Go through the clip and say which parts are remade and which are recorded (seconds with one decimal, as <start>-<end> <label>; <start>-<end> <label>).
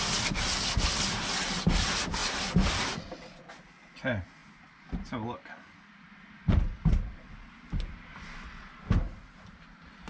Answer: 0.0-10.1 recorded